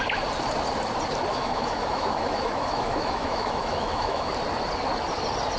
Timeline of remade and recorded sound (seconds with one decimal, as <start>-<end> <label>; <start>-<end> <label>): 0.0-1.3 recorded; 1.3-4.3 remade; 4.3-5.6 recorded